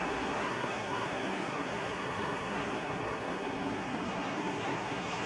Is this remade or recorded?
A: remade